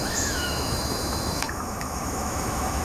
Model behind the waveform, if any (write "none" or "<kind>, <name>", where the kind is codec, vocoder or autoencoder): autoencoder, DAC-VAE